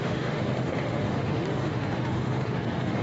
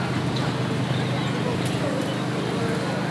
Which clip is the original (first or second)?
second